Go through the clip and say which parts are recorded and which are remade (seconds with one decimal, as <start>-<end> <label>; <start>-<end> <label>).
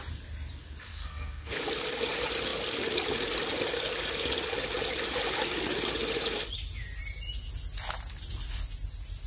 0.0-0.9 recorded; 0.9-1.5 remade; 1.5-9.3 recorded